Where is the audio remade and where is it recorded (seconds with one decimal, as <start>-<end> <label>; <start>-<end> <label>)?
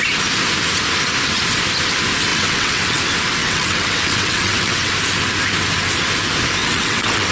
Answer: 0.0-2.3 recorded; 2.3-3.0 remade; 3.0-3.4 recorded; 3.4-4.9 remade; 4.9-6.6 recorded; 6.6-7.3 remade